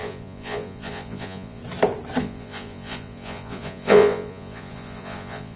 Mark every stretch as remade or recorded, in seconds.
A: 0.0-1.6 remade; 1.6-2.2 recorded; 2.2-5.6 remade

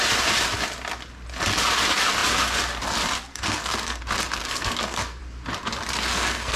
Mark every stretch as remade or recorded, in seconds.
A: 0.0-3.3 recorded; 3.3-4.0 remade; 4.0-4.4 recorded; 4.4-5.2 remade; 5.2-6.1 recorded; 6.1-6.6 remade

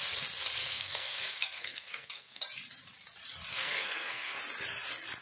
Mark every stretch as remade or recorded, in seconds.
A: 0.0-0.6 recorded; 0.6-2.4 remade; 2.4-3.5 recorded; 3.5-4.4 remade; 4.4-5.2 recorded

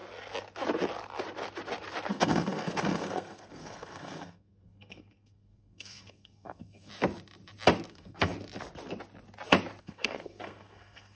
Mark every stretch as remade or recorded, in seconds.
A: 0.0-2.1 recorded; 2.1-6.9 remade; 6.9-7.9 recorded; 7.9-8.3 remade; 8.3-9.8 recorded; 9.8-11.2 remade